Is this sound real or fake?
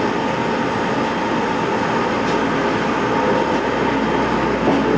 real